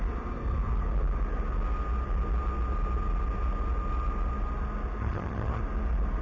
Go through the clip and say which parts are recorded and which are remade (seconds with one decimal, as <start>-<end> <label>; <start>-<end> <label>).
0.0-5.0 recorded; 5.0-5.6 remade; 5.6-6.2 recorded